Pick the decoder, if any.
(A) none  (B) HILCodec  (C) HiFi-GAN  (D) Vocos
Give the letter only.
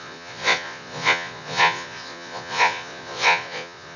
D